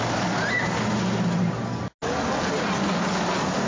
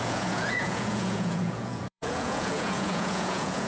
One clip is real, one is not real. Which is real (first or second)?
first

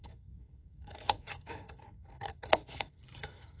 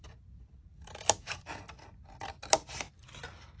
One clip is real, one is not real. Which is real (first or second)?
second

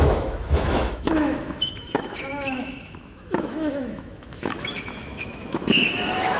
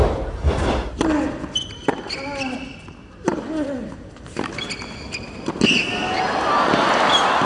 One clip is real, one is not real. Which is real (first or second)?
second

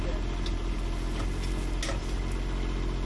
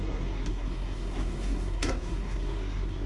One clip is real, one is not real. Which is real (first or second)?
first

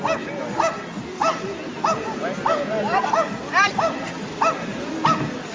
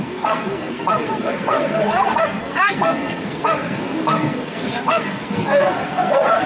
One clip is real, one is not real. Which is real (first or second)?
first